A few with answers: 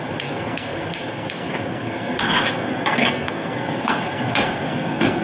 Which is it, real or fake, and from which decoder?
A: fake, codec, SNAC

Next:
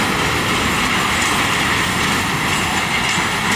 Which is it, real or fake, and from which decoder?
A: real